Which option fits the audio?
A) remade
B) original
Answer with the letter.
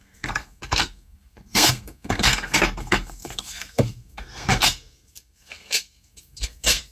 A